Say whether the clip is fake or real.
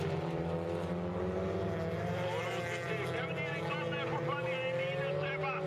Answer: real